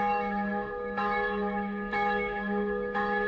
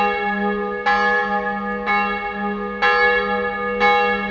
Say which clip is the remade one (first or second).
first